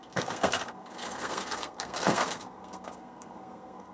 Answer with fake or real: fake